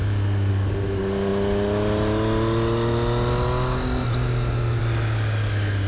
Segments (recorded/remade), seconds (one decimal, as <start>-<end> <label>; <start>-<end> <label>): 0.0-5.9 recorded